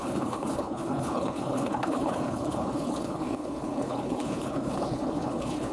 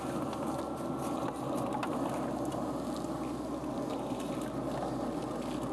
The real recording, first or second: second